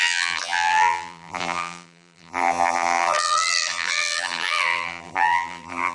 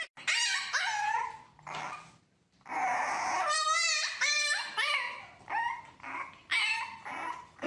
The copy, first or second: first